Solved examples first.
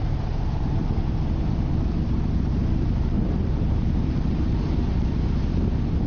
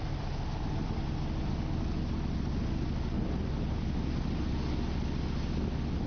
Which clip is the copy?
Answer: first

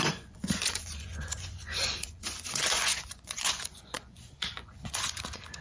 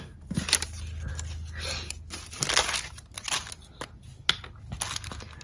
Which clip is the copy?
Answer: first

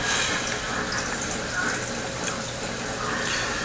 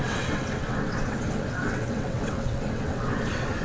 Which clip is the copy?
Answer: second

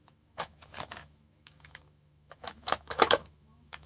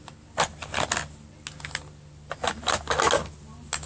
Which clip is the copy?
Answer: first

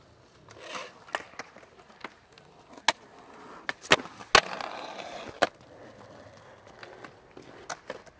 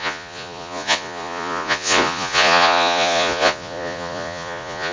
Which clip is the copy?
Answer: second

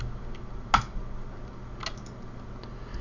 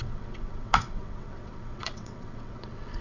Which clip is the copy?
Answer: second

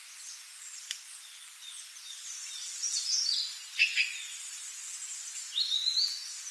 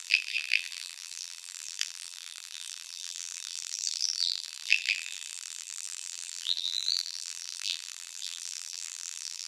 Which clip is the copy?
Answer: second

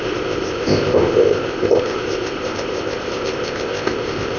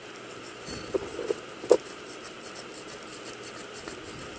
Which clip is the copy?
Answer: first